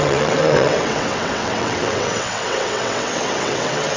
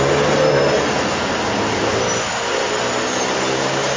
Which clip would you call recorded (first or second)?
second